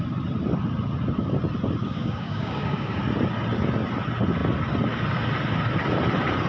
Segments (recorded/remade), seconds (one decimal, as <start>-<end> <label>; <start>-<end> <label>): 0.0-1.8 recorded; 1.8-3.0 remade; 3.0-6.5 recorded